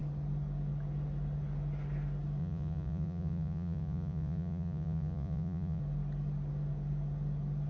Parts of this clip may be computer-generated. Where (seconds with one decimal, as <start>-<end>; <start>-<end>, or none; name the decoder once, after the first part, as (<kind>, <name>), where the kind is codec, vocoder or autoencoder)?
2.4-5.8 (vocoder, Vocos)